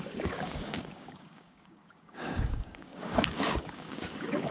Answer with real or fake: fake